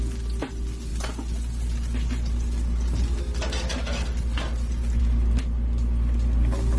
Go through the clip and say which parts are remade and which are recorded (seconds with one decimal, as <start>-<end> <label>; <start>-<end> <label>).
0.0-6.8 recorded